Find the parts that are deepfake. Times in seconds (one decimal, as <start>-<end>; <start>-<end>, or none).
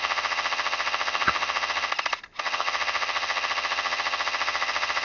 0.0-1.9; 2.4-5.0